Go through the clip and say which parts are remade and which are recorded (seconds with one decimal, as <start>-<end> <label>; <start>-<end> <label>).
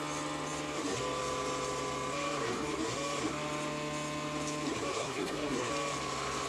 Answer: 0.0-4.9 recorded; 4.9-5.7 remade; 5.7-6.5 recorded